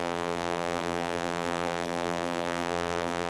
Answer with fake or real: fake